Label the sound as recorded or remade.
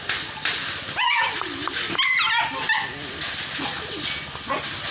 recorded